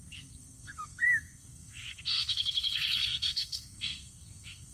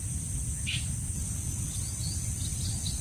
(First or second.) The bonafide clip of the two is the second